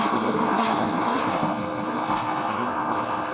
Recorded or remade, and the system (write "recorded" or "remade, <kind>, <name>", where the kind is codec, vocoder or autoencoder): remade, codec, SNAC